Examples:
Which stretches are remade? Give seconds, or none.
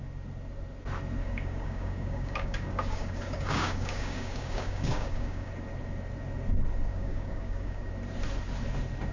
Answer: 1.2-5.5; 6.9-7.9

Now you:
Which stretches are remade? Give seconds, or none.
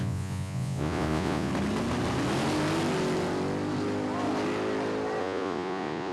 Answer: 0.0-1.5; 5.2-6.1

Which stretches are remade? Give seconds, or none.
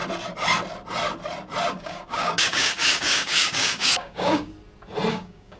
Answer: 1.7-4.5; 5.1-5.6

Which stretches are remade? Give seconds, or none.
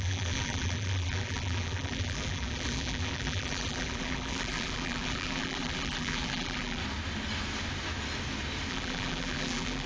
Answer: 0.0-6.8; 8.7-9.9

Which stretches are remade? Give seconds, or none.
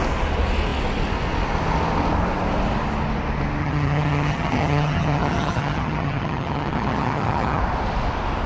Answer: 3.6-7.6